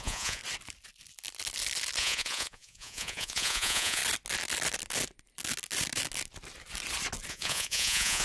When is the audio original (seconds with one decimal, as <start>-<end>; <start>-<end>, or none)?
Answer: 0.4-2.0; 4.0-7.3